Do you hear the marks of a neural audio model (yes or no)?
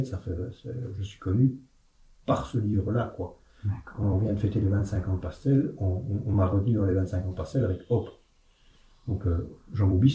yes